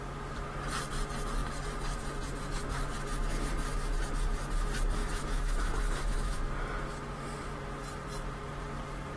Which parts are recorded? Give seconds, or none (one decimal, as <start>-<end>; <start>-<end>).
0.0-5.0; 6.4-9.2

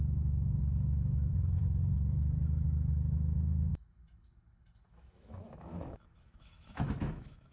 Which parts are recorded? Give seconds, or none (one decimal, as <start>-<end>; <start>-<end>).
0.0-0.6; 1.6-3.7

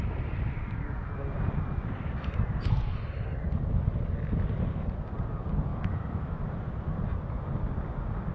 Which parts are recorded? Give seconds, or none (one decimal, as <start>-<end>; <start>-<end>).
0.0-5.7; 6.4-8.3

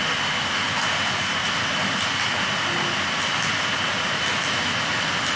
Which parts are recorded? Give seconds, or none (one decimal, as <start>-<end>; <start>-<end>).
0.0-5.4

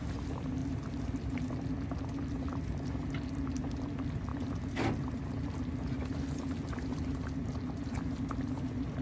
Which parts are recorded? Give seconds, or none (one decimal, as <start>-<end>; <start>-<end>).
0.0-9.0

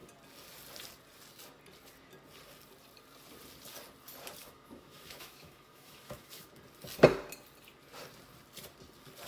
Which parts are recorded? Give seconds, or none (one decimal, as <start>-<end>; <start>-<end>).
0.0-4.4; 6.5-9.3

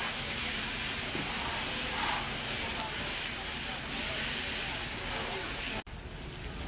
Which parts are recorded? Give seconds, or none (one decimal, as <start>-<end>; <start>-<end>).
0.5-6.7

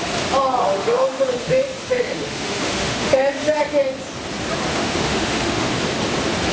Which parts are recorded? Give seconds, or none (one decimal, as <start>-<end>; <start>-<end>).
0.0-0.6; 3.6-4.7; 5.7-6.5